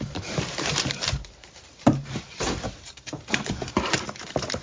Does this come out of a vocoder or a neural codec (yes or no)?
yes